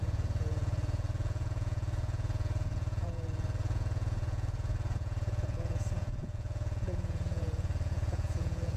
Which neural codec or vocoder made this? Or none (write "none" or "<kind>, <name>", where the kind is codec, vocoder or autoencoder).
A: vocoder, Vocos